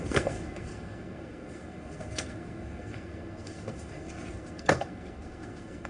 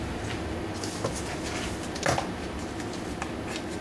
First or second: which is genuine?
second